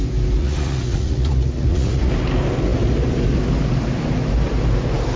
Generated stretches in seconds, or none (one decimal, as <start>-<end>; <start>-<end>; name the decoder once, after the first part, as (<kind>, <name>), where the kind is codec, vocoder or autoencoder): 0.4-2.1 (vocoder, Vocos)